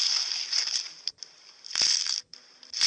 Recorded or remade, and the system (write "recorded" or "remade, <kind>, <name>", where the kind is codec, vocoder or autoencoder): remade, vocoder, BigVGAN v2